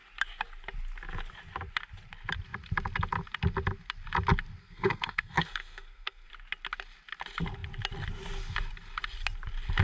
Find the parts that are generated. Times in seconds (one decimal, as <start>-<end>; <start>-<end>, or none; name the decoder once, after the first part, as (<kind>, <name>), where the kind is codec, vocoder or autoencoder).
4.6-6.3 (codec, SNAC)